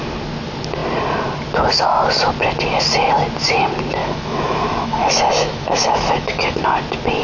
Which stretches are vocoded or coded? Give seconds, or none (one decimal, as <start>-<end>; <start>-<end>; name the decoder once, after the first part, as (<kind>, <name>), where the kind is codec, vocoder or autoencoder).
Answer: 4.0-6.6 (autoencoder, DAC-VAE)